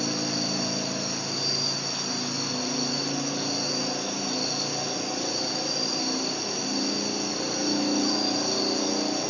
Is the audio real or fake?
real